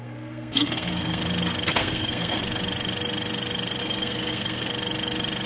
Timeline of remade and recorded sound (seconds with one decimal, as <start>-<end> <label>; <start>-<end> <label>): 0.0-1.2 remade; 1.2-1.7 recorded; 1.7-2.4 remade; 2.4-3.8 recorded; 3.8-4.7 remade; 4.7-5.5 recorded